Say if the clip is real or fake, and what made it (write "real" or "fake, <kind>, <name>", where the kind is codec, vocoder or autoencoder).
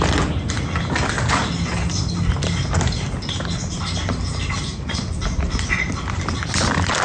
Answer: real